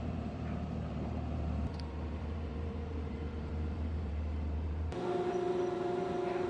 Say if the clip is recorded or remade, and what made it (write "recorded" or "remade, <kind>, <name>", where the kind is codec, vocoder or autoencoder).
remade, vocoder, BigVGAN v2